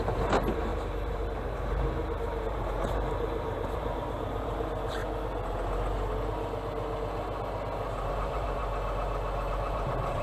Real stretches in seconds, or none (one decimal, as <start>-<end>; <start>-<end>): 5.0-8.1; 8.6-9.5